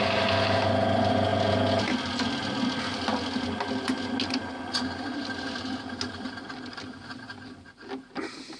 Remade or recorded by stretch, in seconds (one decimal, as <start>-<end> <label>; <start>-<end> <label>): 0.0-8.6 recorded